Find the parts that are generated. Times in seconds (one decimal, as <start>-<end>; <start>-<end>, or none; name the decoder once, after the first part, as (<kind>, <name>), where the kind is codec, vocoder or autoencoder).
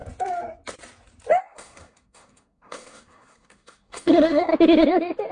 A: 1.4-4.5 (codec, SNAC)